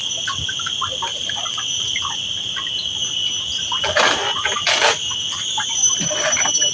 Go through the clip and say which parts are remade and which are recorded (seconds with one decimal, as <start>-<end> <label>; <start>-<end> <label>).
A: 0.0-6.7 recorded